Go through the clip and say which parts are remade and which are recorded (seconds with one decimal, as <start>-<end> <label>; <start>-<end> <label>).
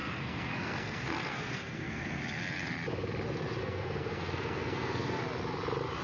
0.0-2.2 remade; 2.2-3.6 recorded; 3.6-5.2 remade; 5.2-6.0 recorded